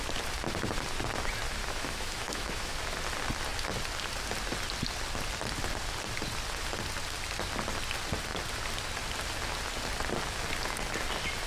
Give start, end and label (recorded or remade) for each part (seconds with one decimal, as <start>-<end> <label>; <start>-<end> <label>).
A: 0.0-1.6 recorded; 1.6-2.7 remade; 2.7-11.5 recorded